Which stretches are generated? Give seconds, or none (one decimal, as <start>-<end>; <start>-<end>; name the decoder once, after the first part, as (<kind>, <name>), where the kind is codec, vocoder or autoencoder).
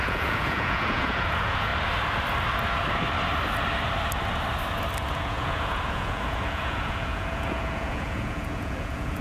0.0-1.7 (vocoder, Vocos); 5.1-9.2